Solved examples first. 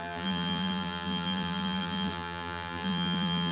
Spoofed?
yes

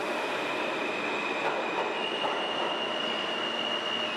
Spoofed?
no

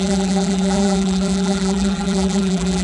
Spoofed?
yes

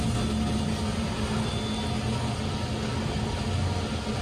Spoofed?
no